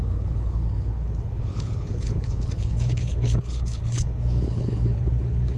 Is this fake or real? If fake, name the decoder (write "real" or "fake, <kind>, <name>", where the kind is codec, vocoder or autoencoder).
fake, codec, HILCodec